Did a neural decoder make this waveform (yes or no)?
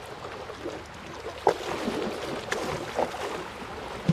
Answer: no